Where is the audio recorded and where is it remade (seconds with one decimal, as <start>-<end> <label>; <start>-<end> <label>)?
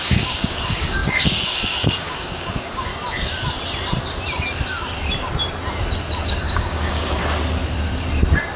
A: 0.0-2.9 remade; 2.9-6.2 recorded; 6.2-7.2 remade; 7.2-8.6 recorded